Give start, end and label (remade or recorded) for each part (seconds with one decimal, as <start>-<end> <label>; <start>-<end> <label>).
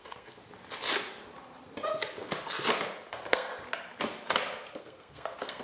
0.0-0.4 remade; 0.4-3.1 recorded; 3.1-3.5 remade; 3.5-4.8 recorded; 4.8-5.6 remade